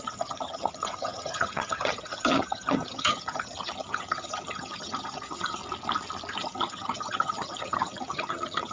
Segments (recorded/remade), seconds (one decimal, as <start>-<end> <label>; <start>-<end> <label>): 0.0-5.6 remade; 5.6-6.3 recorded; 6.3-8.7 remade